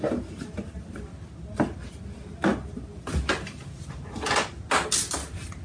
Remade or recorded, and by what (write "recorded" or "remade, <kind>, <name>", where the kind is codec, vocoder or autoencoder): recorded